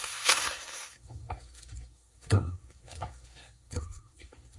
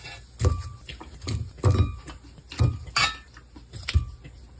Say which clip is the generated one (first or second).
first